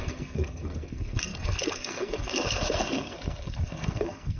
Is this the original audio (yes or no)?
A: no